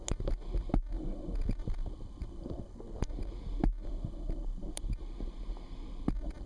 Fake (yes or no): no